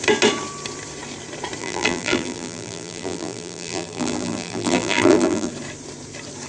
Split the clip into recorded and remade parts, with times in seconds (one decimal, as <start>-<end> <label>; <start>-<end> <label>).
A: 0.0-1.6 recorded; 1.6-5.5 remade; 5.5-6.5 recorded